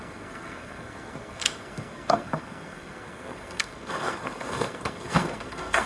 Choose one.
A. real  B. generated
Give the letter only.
B